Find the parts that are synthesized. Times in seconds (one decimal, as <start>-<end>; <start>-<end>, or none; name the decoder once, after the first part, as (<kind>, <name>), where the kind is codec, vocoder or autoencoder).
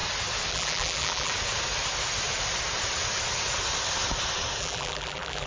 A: 0.5-1.3 (vocoder, BigVGAN v2); 4.6-5.5